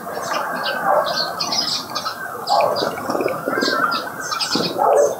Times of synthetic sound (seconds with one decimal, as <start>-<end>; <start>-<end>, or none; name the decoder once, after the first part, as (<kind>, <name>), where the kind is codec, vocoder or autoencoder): none